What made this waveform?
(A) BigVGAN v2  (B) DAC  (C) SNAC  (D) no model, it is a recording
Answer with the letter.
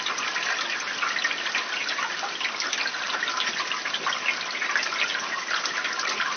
D